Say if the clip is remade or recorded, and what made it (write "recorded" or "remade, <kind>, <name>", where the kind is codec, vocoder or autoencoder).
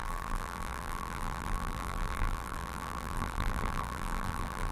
remade, vocoder, BigVGAN v2